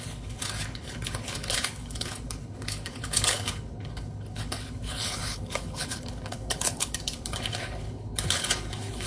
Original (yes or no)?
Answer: no